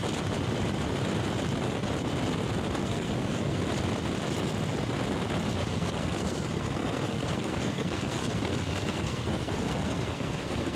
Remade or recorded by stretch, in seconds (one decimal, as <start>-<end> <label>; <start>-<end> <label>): 0.0-2.8 recorded; 2.8-3.6 remade; 3.6-5.6 recorded; 5.6-10.8 remade

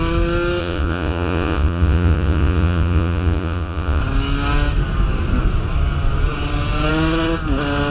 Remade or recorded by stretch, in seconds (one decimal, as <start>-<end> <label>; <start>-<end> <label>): 0.0-0.6 recorded; 0.6-4.0 remade; 4.0-7.9 recorded

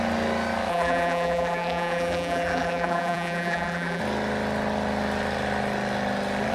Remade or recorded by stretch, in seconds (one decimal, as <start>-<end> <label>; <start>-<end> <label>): 0.0-0.7 recorded; 0.7-4.0 remade; 4.0-6.5 recorded

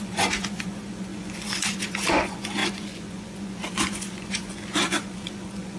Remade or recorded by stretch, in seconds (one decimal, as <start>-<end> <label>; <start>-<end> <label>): 0.0-5.8 remade

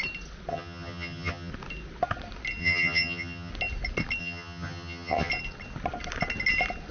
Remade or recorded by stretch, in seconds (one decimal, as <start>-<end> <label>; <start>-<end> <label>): 0.0-0.5 recorded; 0.5-1.5 remade; 1.5-2.6 recorded; 2.6-3.5 remade; 3.5-4.2 recorded; 4.2-5.3 remade; 5.3-6.9 recorded

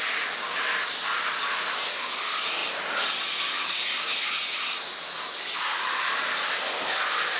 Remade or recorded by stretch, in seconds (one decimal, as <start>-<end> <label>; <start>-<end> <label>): 0.0-7.4 recorded